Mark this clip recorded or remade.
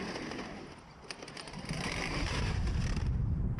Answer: remade